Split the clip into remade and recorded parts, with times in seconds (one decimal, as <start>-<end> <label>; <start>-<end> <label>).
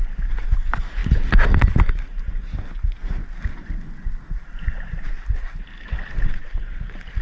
0.0-7.2 recorded